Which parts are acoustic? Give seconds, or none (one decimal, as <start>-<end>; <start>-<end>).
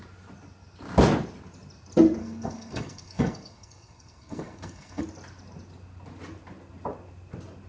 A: 0.0-2.2; 5.0-7.7